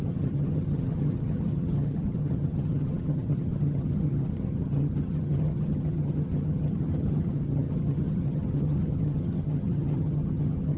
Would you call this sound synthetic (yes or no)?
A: yes